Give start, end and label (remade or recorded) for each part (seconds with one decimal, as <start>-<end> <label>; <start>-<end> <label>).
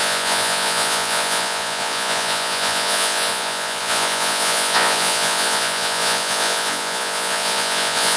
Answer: 0.0-8.2 remade